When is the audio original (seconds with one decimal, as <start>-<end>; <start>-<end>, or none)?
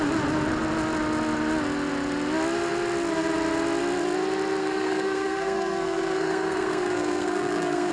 0.0-4.6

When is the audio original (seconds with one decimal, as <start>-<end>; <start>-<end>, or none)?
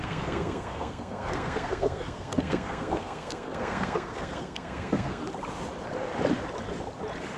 5.2-7.4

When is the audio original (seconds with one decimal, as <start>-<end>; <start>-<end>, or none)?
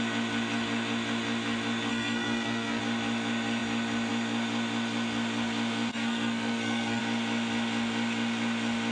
0.0-1.9; 2.8-5.9; 7.0-8.9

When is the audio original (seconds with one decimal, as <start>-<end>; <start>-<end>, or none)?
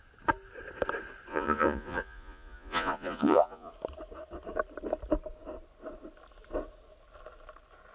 0.0-1.3; 3.7-7.9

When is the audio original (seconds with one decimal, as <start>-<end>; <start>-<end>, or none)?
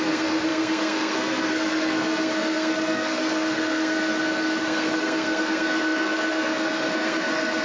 none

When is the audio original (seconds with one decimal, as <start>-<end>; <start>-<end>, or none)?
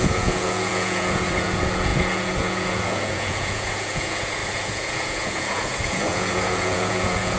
none